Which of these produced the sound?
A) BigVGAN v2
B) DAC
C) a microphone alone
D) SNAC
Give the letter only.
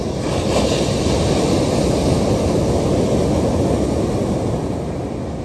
C